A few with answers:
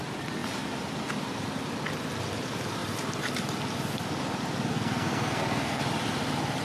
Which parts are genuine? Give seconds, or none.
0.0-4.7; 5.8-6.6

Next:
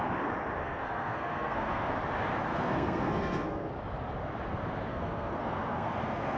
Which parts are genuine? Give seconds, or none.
0.0-0.6; 1.9-2.5; 3.7-4.9

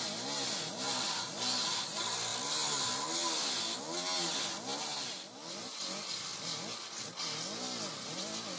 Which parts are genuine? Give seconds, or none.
0.0-2.3; 2.9-4.7; 5.3-8.6

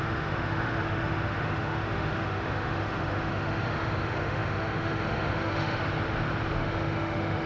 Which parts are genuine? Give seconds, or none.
5.8-6.6

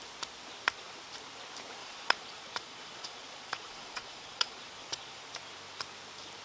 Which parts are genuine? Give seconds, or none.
0.0-1.8; 5.2-6.4